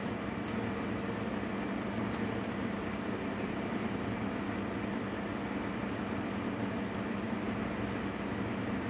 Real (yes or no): yes